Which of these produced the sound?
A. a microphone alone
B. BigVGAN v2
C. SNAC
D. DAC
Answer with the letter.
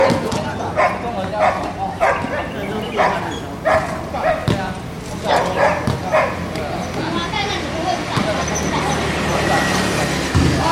A